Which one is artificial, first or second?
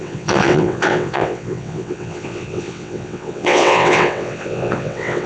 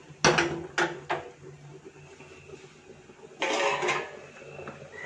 first